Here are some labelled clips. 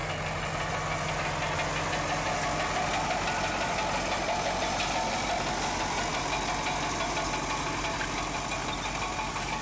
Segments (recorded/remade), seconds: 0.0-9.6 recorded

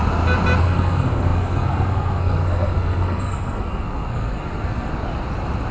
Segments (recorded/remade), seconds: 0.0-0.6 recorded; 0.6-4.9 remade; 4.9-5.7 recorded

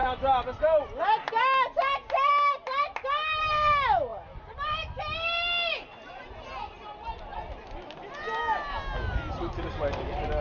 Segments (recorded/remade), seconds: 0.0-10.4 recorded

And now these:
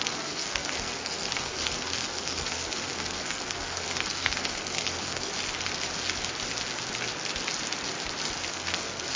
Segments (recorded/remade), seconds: 0.0-5.3 remade; 5.3-8.5 recorded; 8.5-9.2 remade

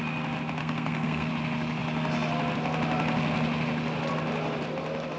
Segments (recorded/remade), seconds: 0.0-0.6 recorded; 0.6-1.3 remade; 1.3-5.2 recorded

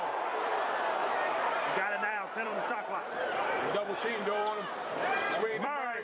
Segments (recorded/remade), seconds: 0.0-6.0 remade

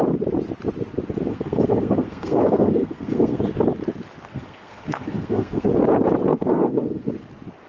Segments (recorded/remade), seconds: 0.0-1.3 recorded; 1.3-3.4 remade; 3.4-4.3 recorded; 4.3-5.7 remade; 5.7-6.3 recorded; 6.3-7.1 remade; 7.1-7.7 recorded